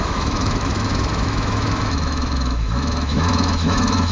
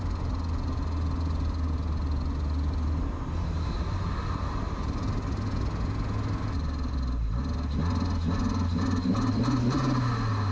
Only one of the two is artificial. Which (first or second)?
first